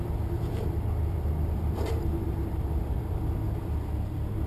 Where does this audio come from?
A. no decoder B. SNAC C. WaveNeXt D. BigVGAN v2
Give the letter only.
D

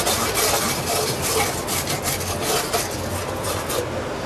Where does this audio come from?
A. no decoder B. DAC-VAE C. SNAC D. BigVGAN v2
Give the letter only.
A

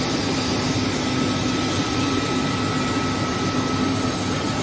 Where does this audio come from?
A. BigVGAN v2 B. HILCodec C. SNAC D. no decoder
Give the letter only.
D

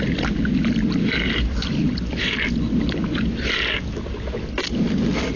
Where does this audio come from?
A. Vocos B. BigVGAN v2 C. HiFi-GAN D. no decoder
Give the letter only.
D